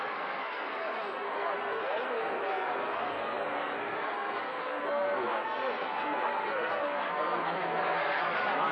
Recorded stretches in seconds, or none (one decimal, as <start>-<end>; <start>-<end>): none